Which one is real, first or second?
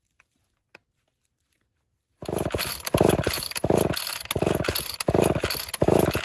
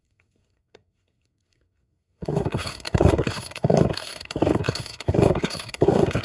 first